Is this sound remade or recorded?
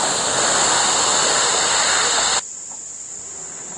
recorded